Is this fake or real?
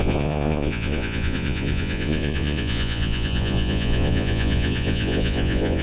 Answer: fake